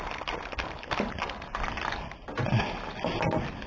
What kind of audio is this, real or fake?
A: real